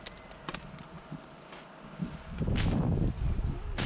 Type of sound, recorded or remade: recorded